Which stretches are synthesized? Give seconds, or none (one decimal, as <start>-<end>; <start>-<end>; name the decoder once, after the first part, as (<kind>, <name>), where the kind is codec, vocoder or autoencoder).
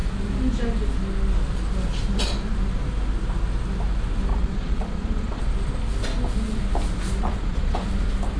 4.3-5.4 (vocoder, Vocos); 7.2-7.9